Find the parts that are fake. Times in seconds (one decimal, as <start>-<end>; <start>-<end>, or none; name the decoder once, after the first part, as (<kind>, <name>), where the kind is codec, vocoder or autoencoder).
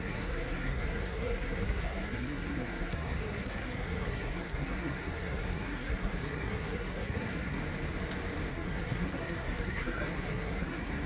0.0-7.6 (codec, SNAC); 8.5-11.1